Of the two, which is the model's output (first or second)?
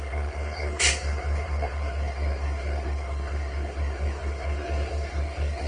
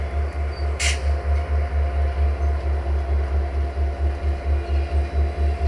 first